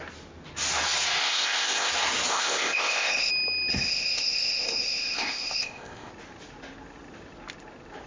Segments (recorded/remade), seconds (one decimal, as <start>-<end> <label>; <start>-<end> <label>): 0.0-1.2 recorded; 1.2-1.9 remade; 1.9-2.3 recorded; 2.3-3.3 remade; 3.3-3.7 recorded; 3.7-6.1 remade; 6.1-8.1 recorded